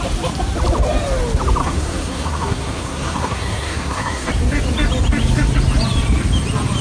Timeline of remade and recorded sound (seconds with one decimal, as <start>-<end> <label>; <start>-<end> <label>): 0.0-1.6 recorded; 1.6-4.3 remade; 4.3-6.8 recorded